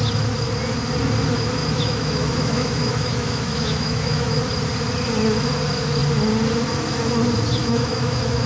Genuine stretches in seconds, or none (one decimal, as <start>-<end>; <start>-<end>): 0.0-1.6; 4.4-7.6